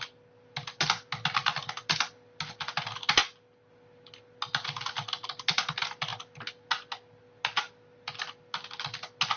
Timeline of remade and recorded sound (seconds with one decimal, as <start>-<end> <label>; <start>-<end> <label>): 0.0-9.4 recorded